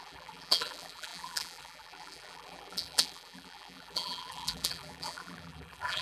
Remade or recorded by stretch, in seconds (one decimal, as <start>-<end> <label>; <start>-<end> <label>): 0.0-6.0 remade